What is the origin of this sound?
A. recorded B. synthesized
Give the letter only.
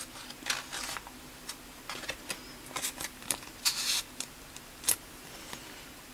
A